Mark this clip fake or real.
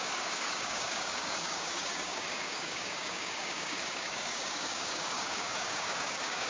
fake